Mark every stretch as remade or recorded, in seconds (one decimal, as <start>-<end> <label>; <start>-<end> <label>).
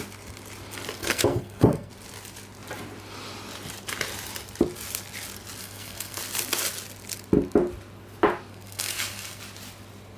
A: 0.0-1.0 recorded; 1.0-1.9 remade; 1.9-5.6 recorded; 5.6-6.2 remade; 6.2-8.5 recorded; 8.5-9.4 remade; 9.4-10.2 recorded